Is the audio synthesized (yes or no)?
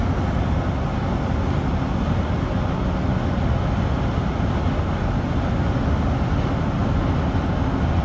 no